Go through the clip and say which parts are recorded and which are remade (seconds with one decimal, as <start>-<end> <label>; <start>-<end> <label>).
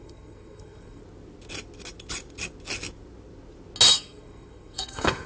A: 0.0-1.0 remade; 1.0-3.9 recorded; 3.9-5.3 remade